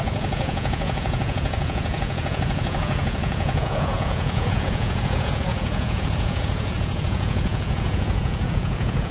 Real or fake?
fake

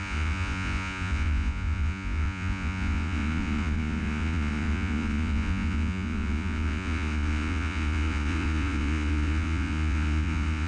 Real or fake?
fake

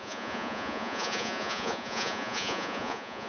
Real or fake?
fake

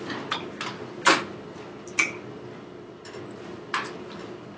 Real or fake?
real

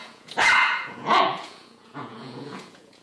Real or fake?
fake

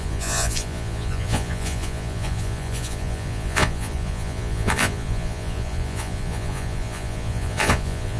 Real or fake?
fake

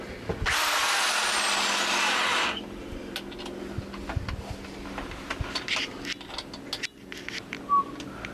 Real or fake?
real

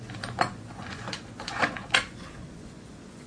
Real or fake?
fake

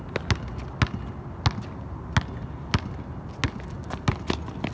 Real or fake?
real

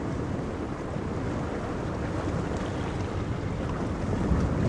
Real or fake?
real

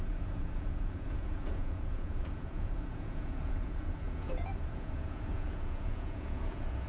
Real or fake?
fake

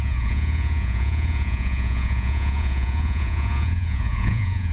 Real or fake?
fake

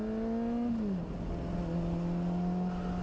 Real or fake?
real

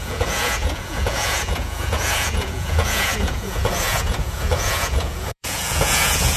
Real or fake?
fake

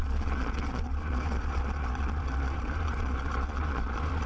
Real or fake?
fake